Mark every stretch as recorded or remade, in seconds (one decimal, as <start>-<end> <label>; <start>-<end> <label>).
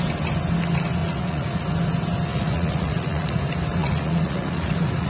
0.0-1.0 recorded; 1.0-1.6 remade; 1.6-2.3 recorded; 2.3-3.4 remade; 3.4-3.8 recorded; 3.8-5.1 remade